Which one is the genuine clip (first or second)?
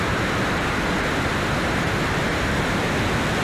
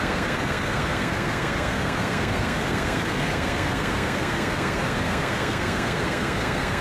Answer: first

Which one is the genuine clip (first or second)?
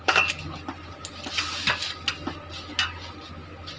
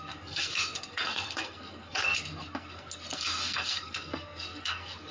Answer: first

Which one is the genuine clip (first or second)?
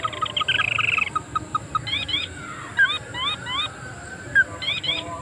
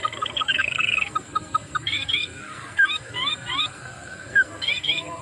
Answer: first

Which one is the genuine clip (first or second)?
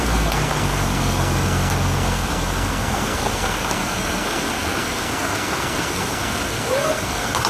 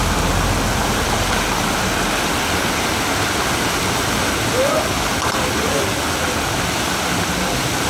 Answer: second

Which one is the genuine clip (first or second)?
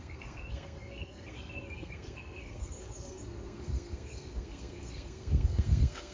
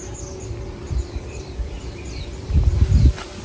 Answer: second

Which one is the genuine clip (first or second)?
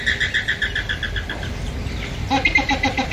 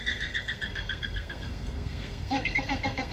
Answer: first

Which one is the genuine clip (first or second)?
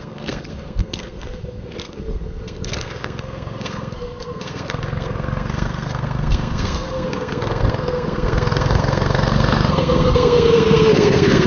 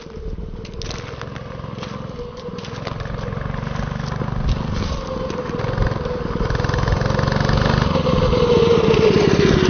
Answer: second